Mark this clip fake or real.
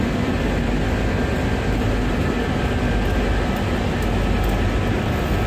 real